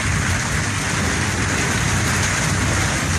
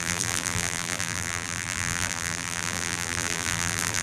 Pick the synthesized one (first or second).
second